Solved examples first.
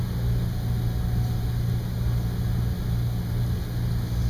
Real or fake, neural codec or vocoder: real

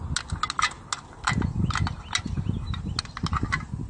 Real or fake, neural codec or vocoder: real